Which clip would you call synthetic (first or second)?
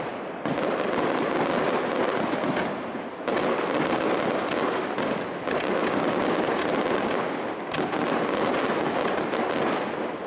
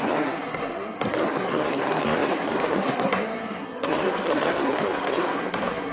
second